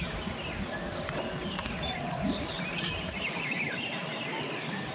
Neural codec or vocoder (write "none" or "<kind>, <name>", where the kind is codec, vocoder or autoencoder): none